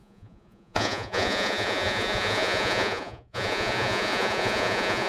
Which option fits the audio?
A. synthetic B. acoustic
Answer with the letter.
A